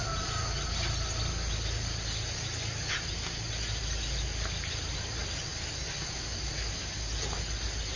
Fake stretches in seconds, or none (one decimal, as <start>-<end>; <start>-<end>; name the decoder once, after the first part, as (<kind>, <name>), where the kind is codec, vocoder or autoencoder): none

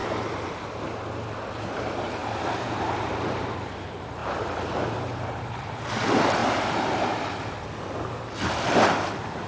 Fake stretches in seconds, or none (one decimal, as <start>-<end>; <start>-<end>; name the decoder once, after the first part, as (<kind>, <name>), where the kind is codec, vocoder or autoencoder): 0.0-0.6 (vocoder, BigVGAN v2); 2.2-3.4; 4.2-5.9

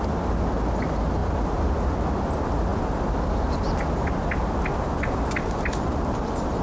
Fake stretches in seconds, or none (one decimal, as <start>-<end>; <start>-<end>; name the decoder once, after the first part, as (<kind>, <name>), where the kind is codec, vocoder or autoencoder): none

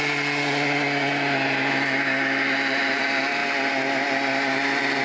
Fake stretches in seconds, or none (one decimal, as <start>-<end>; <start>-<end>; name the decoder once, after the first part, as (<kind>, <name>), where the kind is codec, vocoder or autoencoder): 3.4-5.0 (vocoder, BigVGAN v2)

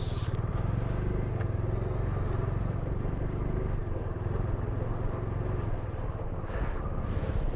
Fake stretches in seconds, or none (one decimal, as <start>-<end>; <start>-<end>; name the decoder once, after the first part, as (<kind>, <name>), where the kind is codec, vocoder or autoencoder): none

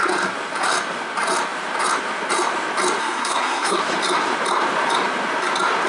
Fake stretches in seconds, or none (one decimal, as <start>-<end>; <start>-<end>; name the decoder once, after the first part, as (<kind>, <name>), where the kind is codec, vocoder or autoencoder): 3.0-3.8 (codec, SNAC)

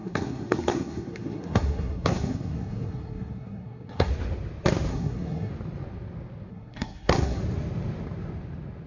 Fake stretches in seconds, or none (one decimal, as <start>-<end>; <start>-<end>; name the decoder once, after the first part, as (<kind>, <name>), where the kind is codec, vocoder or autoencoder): 0.0-4.1 (codec, SNAC); 4.9-5.5; 6.5-7.4

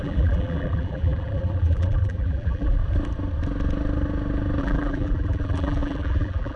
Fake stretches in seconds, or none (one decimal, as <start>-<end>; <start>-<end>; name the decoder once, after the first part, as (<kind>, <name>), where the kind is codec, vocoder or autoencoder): 0.0-2.8 (vocoder, BigVGAN v2); 4.6-6.6